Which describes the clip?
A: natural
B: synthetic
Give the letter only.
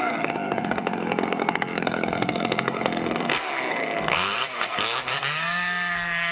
B